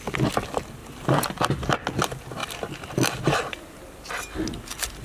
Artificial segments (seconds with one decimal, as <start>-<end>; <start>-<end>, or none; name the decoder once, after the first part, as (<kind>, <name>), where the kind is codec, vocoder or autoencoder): none